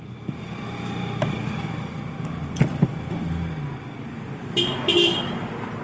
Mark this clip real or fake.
real